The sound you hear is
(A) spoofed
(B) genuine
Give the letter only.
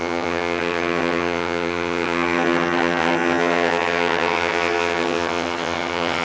A